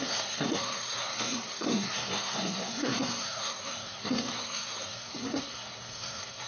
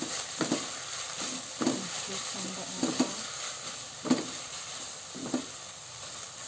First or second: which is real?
second